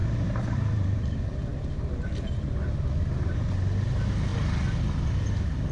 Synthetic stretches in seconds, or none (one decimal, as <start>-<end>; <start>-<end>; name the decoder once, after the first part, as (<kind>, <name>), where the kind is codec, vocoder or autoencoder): 0.0-1.0 (vocoder, BigVGAN v2)